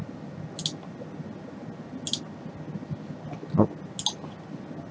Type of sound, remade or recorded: recorded